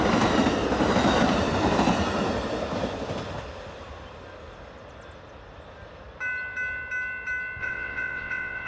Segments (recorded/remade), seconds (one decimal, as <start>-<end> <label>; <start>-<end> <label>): 0.0-7.6 recorded; 7.6-8.7 remade